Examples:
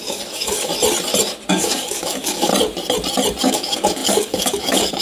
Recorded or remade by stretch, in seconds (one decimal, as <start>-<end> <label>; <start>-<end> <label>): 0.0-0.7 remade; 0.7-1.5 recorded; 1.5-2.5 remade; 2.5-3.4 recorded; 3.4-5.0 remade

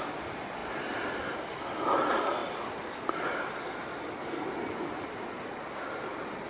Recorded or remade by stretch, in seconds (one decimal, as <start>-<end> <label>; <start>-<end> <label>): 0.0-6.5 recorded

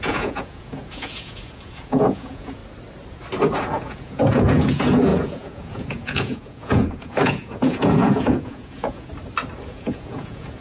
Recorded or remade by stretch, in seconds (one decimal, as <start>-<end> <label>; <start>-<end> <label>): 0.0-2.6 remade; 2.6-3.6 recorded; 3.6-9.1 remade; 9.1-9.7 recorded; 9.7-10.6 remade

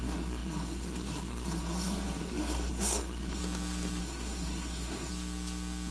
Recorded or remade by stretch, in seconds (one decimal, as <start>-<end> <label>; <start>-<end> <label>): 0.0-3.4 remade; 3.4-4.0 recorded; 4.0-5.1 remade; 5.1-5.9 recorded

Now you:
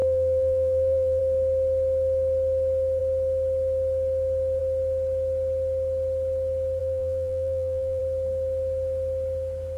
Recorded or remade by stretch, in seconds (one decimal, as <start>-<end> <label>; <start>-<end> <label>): 0.0-1.2 remade; 1.2-6.8 recorded; 6.8-8.0 remade; 8.0-9.8 recorded

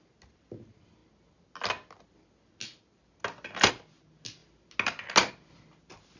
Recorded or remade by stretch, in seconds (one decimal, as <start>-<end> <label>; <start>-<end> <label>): 0.0-6.2 recorded

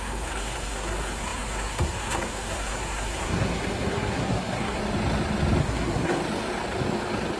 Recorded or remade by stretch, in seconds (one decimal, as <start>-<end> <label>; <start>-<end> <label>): 0.0-4.8 remade; 4.8-5.6 recorded; 5.6-6.2 remade; 6.2-7.4 recorded